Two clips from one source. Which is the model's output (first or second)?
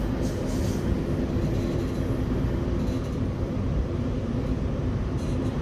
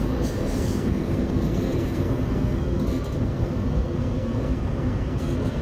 second